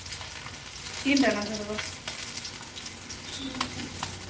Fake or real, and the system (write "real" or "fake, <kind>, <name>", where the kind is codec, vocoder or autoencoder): real